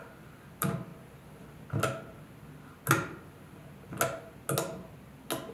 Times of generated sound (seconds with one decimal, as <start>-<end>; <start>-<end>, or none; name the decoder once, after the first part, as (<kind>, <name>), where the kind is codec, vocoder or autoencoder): none